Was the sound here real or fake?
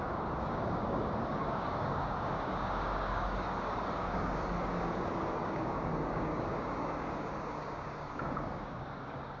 fake